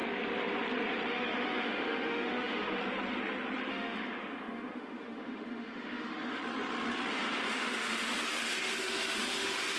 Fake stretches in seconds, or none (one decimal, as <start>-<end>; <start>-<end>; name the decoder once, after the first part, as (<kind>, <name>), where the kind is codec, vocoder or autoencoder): 1.1-2.8 (autoencoder, DAC-VAE); 3.7-6.4; 7.1-9.8